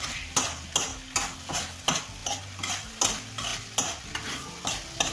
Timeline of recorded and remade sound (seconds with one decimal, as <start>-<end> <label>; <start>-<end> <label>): 0.0-5.1 recorded